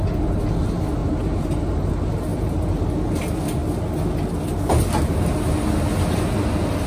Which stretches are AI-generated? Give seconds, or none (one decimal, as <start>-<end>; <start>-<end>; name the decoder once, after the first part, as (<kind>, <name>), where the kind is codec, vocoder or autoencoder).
1.0-1.9 (vocoder, BigVGAN v2); 2.3-2.8